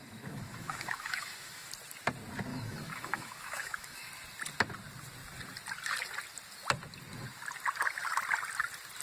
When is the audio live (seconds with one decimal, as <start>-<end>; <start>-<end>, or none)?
1.7-2.5; 4.1-9.0